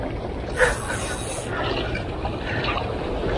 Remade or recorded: recorded